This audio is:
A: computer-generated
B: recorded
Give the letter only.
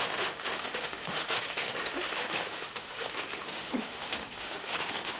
A